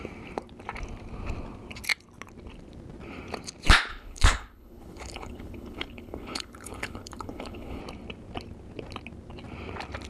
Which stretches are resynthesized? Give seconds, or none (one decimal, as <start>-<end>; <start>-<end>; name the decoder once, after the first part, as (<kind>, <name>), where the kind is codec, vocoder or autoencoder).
3.9-7.8 (codec, HILCodec)